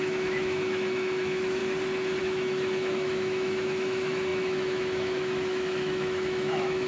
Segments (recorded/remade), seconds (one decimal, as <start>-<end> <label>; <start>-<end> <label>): 0.0-1.6 remade; 1.6-2.2 recorded; 2.2-6.9 remade